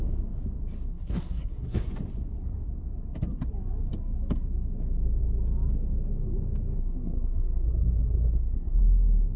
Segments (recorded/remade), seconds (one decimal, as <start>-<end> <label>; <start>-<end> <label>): 0.0-0.9 recorded; 0.9-1.9 remade; 1.9-6.8 recorded; 6.8-8.8 remade; 8.8-9.4 recorded